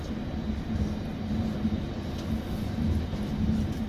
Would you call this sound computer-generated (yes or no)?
no